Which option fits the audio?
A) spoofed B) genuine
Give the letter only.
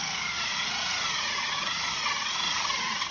A